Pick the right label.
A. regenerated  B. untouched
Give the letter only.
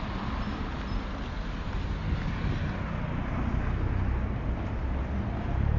B